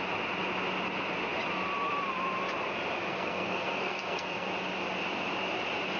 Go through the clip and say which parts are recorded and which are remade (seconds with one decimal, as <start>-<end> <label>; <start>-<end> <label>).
0.0-3.1 recorded; 3.1-4.5 remade; 4.5-6.0 recorded